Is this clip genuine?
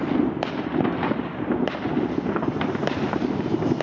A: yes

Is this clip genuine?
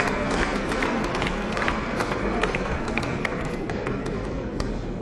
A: no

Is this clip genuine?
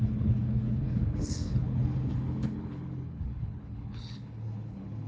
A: no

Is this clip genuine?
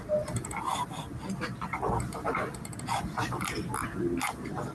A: yes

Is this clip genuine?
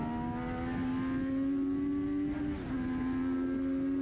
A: yes